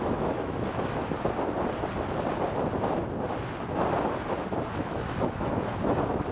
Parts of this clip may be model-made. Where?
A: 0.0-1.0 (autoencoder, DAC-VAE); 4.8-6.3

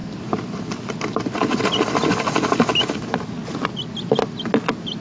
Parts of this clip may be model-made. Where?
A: none

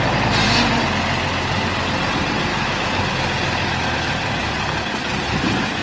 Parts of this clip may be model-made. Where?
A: 2.5-3.1 (autoencoder, DAC-VAE)

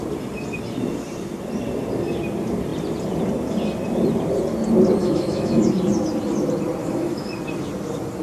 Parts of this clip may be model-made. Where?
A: 5.0-5.6 (autoencoder, DAC-VAE); 6.8-7.3